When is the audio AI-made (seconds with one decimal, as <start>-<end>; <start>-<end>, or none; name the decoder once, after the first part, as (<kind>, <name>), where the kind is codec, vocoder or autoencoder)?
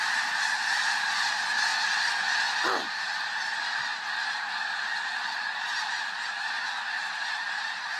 7.4-8.0 (vocoder, BigVGAN v2)